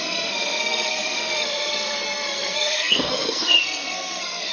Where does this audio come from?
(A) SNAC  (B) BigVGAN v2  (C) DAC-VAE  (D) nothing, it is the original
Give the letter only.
A